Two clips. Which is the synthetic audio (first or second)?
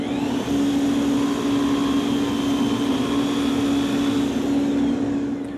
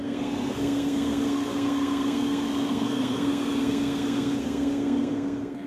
second